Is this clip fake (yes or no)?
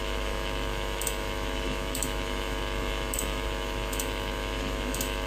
yes